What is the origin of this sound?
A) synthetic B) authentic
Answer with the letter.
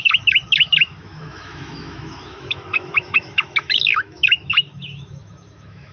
A